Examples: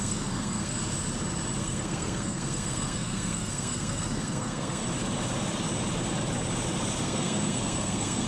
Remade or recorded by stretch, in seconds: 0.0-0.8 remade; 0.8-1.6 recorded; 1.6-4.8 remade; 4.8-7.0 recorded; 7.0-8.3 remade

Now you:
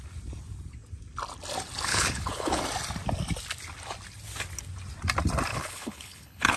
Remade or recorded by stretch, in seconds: 0.0-1.9 recorded; 1.9-2.6 remade; 2.6-5.5 recorded; 5.5-6.6 remade

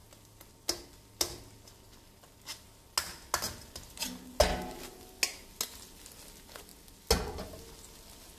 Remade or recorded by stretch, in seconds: 0.0-8.4 recorded

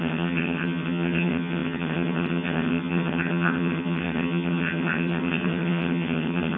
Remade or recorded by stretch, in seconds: 0.0-6.6 remade

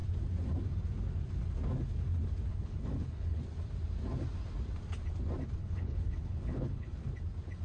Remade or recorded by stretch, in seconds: 0.0-2.5 recorded; 2.5-3.4 remade; 3.4-5.6 recorded; 5.6-7.0 remade; 7.0-7.6 recorded

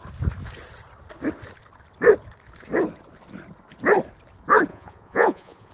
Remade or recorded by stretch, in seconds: 0.0-4.7 recorded; 4.7-5.7 remade

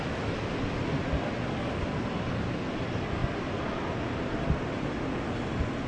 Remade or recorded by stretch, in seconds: 0.0-5.9 recorded

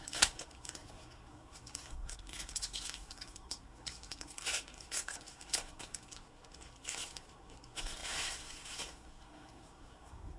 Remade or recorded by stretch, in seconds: 0.0-10.4 remade